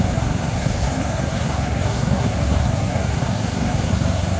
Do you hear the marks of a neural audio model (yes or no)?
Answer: yes